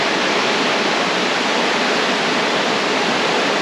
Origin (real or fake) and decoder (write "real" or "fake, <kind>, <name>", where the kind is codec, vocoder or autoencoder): real